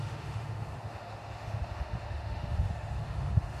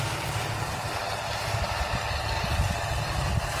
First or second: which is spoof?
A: first